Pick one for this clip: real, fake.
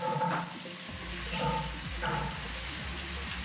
real